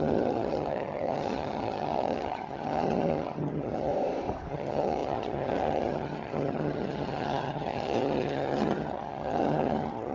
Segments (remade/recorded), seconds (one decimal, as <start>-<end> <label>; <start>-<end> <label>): 0.0-3.9 remade; 3.9-4.5 recorded; 4.5-10.1 remade